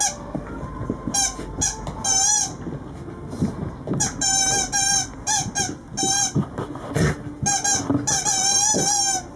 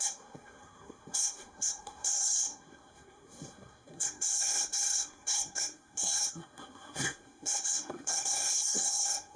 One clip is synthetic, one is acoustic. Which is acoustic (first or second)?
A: first